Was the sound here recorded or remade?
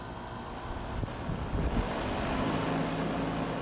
recorded